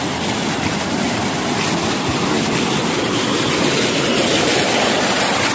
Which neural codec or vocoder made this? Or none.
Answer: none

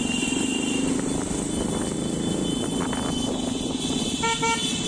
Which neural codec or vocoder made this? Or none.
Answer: none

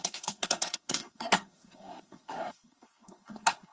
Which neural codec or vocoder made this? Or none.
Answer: codec, SNAC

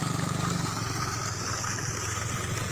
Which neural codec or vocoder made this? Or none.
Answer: none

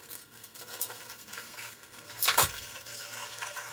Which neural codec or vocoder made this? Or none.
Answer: codec, SNAC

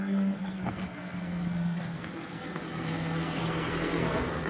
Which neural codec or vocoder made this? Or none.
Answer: codec, SNAC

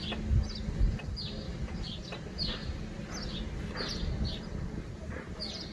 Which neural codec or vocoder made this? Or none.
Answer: none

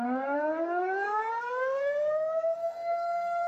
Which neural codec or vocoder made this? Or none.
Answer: codec, SNAC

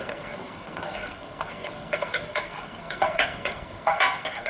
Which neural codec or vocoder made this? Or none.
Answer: codec, SNAC